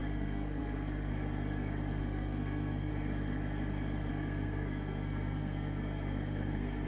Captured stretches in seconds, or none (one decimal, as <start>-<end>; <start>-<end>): 1.1-2.0; 2.9-4.1